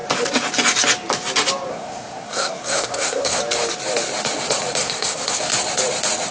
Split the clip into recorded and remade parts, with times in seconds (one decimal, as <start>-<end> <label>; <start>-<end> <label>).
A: 0.0-1.7 recorded; 1.7-3.4 remade; 3.4-4.8 recorded; 4.8-5.4 remade; 5.4-6.3 recorded